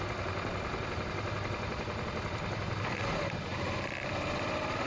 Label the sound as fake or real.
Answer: real